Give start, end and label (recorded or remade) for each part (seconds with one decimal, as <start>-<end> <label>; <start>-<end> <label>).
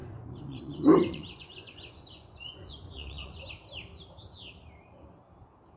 0.0-3.5 remade; 3.5-5.8 recorded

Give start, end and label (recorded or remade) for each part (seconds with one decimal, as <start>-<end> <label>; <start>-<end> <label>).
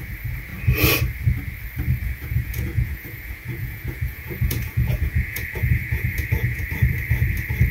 0.0-2.0 recorded; 2.0-6.6 remade; 6.6-7.7 recorded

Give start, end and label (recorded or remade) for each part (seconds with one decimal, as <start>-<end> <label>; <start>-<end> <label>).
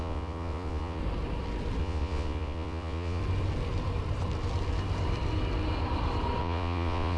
0.0-1.0 remade; 1.0-1.8 recorded; 1.8-3.2 remade; 3.2-6.4 recorded; 6.4-7.2 remade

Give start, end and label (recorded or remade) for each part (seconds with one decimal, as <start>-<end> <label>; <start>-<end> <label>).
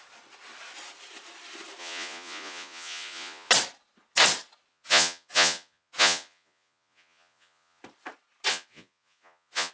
0.0-1.8 recorded; 1.8-3.5 remade; 3.5-4.7 recorded; 4.7-7.8 remade; 7.8-8.5 recorded; 8.5-9.7 remade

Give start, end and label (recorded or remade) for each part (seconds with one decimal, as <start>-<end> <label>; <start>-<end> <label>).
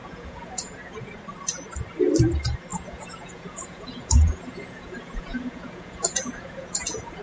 0.0-1.2 remade; 1.2-2.7 recorded; 2.7-7.2 remade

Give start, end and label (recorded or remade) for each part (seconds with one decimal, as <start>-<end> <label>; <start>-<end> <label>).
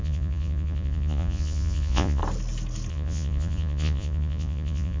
0.0-2.2 remade; 2.2-2.9 recorded; 2.9-5.0 remade